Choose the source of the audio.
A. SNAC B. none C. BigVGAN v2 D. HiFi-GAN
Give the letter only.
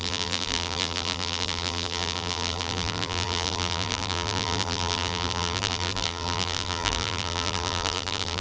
C